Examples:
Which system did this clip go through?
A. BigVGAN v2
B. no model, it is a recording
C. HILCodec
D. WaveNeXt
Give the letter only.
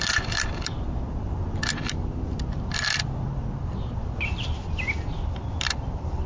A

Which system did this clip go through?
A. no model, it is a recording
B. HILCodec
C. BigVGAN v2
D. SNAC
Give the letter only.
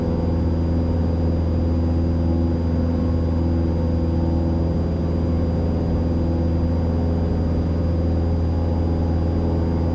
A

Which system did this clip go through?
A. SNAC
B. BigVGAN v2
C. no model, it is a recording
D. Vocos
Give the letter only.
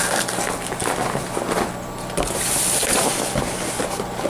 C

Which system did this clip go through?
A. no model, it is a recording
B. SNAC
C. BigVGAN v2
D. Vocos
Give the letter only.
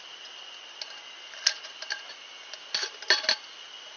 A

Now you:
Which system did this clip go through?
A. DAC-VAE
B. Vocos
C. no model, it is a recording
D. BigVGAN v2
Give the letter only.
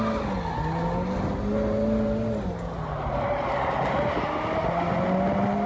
C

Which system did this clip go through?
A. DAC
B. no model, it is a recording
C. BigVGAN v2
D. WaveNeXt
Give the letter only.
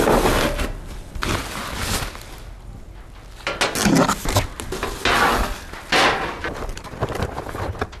B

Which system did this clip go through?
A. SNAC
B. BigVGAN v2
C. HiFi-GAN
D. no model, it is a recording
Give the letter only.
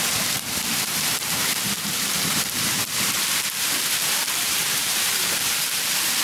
B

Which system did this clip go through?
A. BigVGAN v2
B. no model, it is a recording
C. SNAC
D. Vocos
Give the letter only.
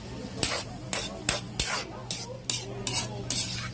B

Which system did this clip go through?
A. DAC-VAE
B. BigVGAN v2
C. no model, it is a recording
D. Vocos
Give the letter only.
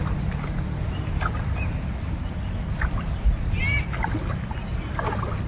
C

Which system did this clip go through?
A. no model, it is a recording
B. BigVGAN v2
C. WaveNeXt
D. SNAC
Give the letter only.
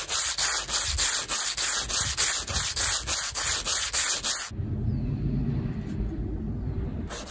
A